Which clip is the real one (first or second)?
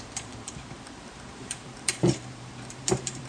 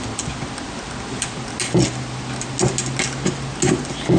second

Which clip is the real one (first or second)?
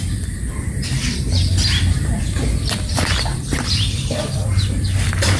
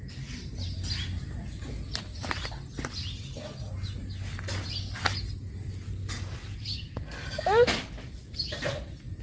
second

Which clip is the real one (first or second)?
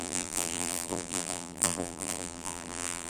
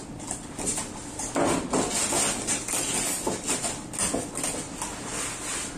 second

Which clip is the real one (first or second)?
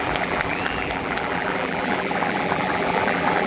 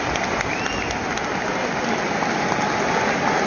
second